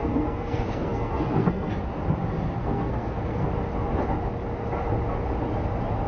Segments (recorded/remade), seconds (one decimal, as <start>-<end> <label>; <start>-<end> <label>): 0.0-1.7 remade; 1.7-2.6 recorded; 2.6-3.5 remade; 3.5-6.1 recorded

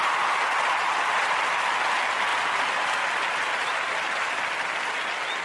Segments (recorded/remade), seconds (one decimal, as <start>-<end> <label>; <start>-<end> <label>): 0.0-5.4 recorded

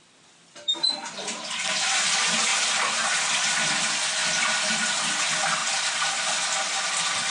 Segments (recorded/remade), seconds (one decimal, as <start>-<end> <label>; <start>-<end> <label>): 0.0-7.3 recorded

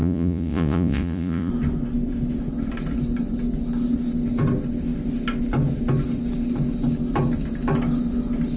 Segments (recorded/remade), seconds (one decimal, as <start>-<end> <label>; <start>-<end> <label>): 0.0-1.5 remade; 1.5-8.6 recorded